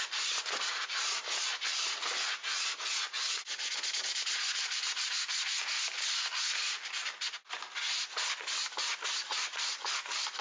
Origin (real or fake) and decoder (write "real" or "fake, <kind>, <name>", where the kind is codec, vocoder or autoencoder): real